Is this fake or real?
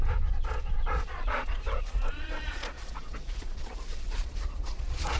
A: fake